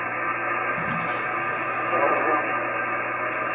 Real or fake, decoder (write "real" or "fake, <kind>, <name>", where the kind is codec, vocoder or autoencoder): real